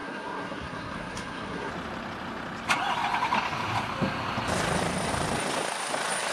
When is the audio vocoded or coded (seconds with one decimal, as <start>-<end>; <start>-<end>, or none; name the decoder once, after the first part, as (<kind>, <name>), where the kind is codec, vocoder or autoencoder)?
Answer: 0.0-1.7 (codec, SNAC)